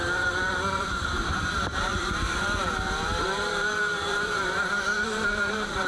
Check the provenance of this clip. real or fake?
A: fake